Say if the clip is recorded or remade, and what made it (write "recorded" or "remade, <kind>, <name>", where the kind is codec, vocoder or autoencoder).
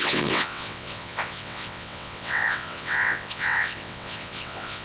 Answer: remade, vocoder, WaveNeXt